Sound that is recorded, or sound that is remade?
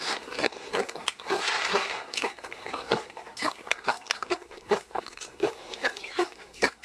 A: remade